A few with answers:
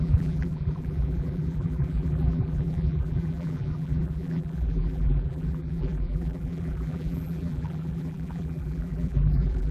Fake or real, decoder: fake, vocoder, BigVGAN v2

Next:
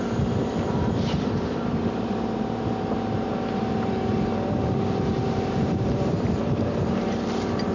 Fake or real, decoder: fake, vocoder, BigVGAN v2